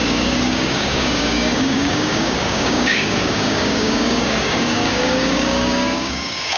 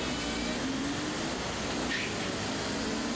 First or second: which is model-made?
first